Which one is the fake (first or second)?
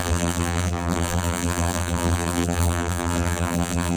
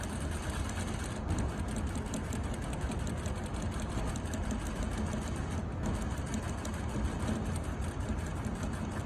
first